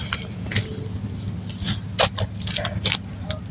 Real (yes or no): yes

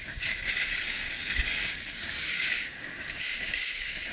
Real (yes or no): no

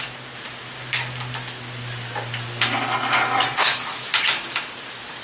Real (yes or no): yes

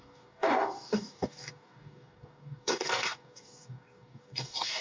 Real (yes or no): no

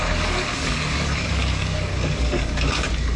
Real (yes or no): no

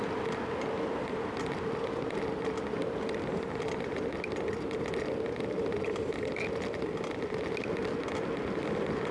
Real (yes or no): yes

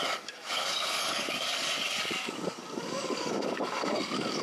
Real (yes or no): no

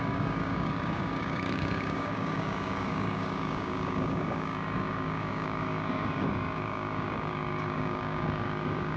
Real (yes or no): no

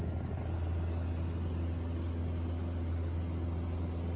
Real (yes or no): yes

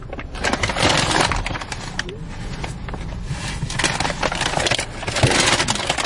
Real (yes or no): yes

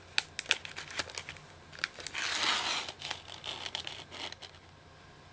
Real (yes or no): yes